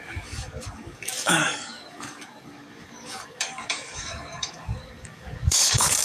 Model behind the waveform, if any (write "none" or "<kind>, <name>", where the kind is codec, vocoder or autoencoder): codec, DAC